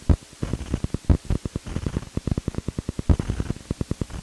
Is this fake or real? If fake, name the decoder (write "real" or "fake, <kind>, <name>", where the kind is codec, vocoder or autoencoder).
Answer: real